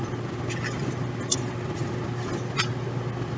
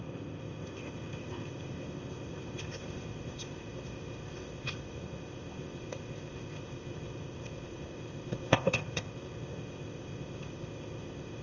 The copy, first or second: second